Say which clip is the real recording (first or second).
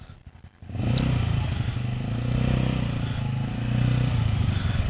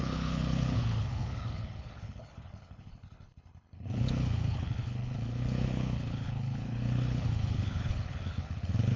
first